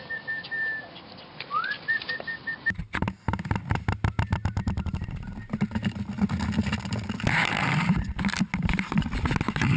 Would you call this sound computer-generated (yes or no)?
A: no